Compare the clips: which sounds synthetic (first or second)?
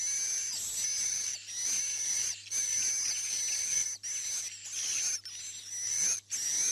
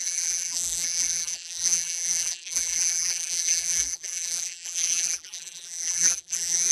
second